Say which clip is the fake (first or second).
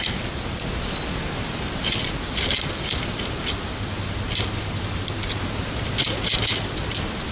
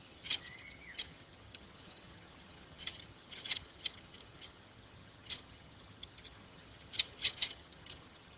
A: second